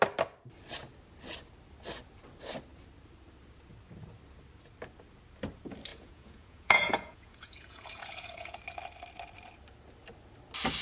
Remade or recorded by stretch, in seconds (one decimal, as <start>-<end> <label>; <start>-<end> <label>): 0.0-5.9 recorded; 5.9-8.6 remade; 8.6-10.8 recorded